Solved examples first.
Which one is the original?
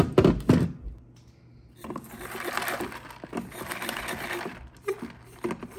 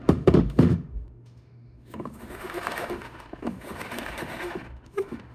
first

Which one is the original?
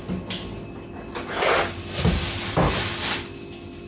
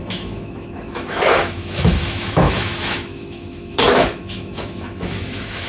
first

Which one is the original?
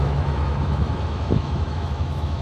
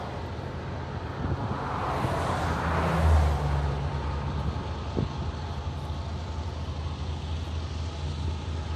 second